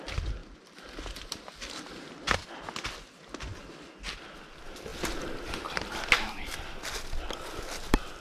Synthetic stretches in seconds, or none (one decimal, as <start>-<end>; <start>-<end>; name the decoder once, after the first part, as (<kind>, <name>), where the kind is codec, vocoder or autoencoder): none